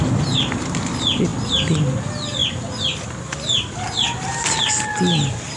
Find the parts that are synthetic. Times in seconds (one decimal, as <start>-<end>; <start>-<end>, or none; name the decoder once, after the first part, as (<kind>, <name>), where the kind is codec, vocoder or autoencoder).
2.4-4.4 (vocoder, BigVGAN v2)